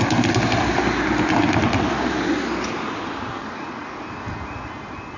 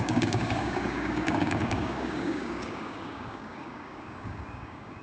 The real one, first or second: first